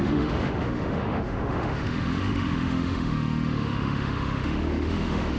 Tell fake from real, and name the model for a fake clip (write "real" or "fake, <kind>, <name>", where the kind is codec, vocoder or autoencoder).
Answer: fake, autoencoder, DAC-VAE